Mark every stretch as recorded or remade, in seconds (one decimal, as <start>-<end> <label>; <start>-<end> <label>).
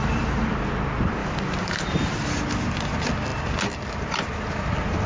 0.0-0.6 remade; 0.6-1.2 recorded; 1.2-2.3 remade; 2.3-5.1 recorded